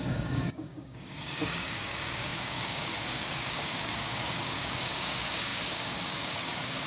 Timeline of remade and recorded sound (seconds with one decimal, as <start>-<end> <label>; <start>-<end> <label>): 0.0-6.9 remade